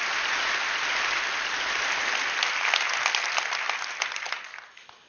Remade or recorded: recorded